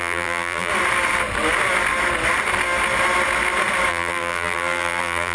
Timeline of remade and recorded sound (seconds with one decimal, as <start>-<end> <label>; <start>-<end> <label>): 0.0-0.7 remade; 0.7-3.9 recorded; 3.9-5.3 remade